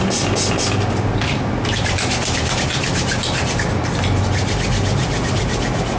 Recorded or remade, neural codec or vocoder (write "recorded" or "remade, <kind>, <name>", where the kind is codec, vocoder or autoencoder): recorded